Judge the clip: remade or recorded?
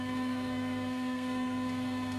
remade